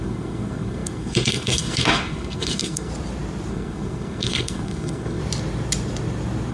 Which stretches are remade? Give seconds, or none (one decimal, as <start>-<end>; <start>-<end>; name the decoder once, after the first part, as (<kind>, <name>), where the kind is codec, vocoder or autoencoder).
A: 0.0-2.9 (codec, SNAC); 3.5-5.2